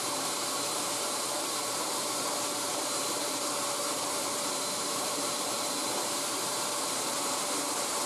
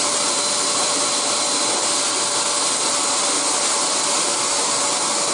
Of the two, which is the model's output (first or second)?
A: first